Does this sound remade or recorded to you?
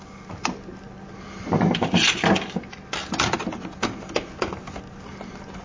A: recorded